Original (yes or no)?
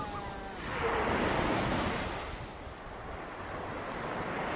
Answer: yes